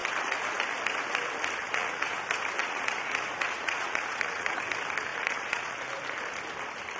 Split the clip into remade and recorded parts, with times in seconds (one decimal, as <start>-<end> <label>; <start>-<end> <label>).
0.0-1.6 recorded; 1.6-2.2 remade; 2.2-2.6 recorded; 2.6-4.6 remade; 4.6-5.1 recorded; 5.1-5.8 remade; 5.8-7.0 recorded